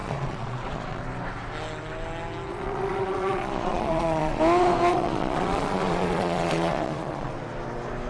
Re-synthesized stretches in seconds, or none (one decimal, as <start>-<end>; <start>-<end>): 0.0-1.0; 2.5-4.4; 4.9-7.3